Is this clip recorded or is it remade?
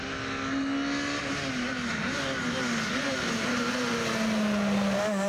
recorded